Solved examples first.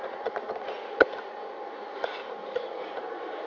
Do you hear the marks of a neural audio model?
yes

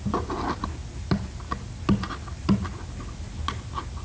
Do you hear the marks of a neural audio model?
no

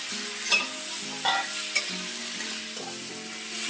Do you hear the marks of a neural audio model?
no